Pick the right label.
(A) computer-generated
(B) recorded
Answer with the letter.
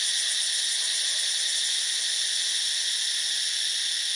B